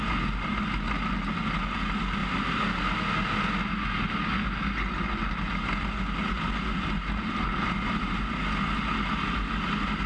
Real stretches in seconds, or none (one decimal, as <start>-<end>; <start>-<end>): 0.0-10.1